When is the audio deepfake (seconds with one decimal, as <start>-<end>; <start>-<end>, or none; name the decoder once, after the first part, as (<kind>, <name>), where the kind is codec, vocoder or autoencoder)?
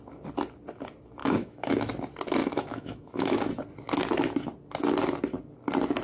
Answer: 1.2-1.9 (autoencoder, DAC-VAE); 2.4-3.5